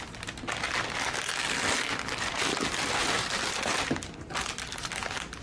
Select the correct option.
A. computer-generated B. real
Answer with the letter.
B